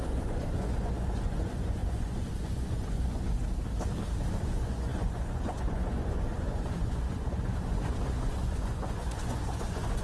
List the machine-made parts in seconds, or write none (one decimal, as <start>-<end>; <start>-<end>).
0.0-3.4; 4.4-10.0